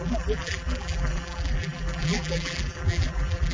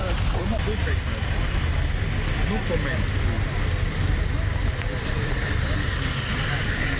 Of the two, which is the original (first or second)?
second